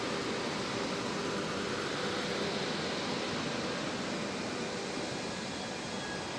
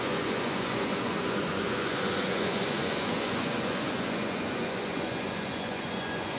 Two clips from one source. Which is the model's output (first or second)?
second